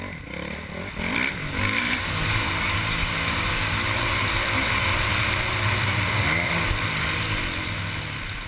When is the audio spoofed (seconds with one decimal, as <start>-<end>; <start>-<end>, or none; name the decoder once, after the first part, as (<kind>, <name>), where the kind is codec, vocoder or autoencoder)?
1.4-3.8 (codec, DAC)